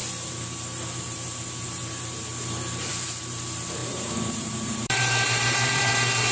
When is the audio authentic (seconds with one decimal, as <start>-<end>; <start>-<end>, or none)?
0.0-3.8; 5.8-6.3